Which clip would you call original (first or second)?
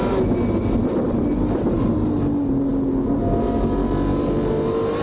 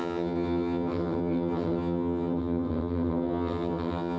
first